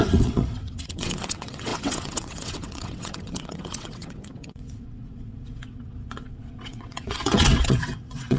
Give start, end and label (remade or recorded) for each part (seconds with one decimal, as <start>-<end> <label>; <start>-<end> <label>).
0.0-8.4 remade